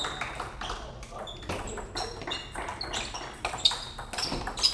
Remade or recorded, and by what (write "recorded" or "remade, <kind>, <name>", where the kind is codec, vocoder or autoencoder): recorded